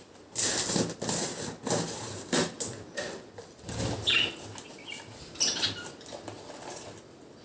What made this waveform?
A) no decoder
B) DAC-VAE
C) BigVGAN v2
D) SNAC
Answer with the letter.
A